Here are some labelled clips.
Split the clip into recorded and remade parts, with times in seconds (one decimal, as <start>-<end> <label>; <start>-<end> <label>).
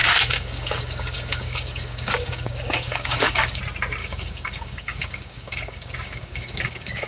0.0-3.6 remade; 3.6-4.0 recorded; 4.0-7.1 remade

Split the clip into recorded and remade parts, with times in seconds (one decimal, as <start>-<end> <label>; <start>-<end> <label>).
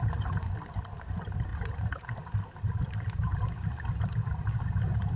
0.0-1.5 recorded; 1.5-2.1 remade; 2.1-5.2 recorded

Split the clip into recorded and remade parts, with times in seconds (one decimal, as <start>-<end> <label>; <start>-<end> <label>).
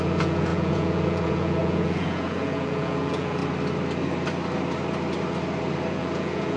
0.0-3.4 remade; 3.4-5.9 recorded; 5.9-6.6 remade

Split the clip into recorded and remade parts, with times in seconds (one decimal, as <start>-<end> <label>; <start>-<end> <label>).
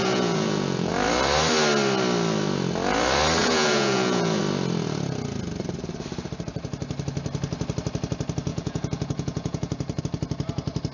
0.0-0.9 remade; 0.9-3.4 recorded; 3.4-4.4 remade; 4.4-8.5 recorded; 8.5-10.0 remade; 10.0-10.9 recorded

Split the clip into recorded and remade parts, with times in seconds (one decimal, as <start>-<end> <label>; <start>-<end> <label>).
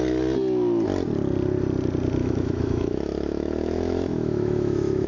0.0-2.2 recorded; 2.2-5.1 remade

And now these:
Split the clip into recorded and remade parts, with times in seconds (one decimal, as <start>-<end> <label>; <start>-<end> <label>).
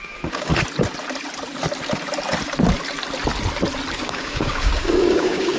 0.0-0.5 remade; 0.5-3.9 recorded; 3.9-5.6 remade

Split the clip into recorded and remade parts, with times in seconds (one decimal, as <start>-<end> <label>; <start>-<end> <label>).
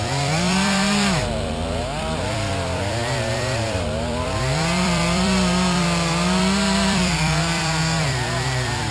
0.0-8.9 remade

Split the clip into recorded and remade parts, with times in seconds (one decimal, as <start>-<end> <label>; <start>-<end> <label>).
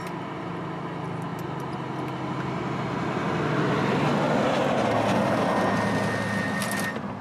0.0-7.2 recorded